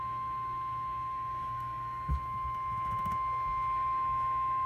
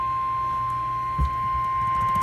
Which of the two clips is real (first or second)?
second